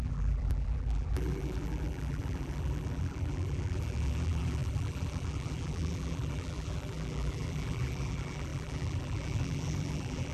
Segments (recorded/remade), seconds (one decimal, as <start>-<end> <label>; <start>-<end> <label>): 0.0-10.3 remade